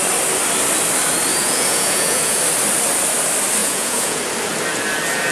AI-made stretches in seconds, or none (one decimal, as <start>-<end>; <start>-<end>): 1.3-2.4; 3.6-4.2